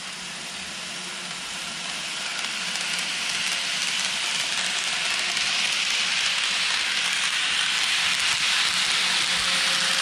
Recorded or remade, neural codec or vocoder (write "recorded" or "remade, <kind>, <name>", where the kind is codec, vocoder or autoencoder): recorded